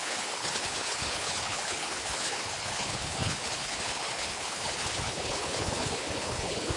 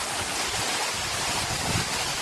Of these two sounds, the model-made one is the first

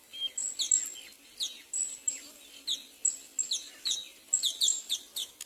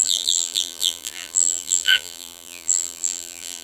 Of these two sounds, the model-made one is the second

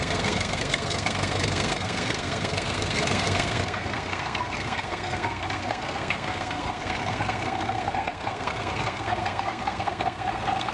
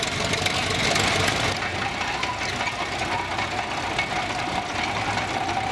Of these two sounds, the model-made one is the first